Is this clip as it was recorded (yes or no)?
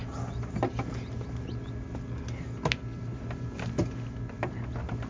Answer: yes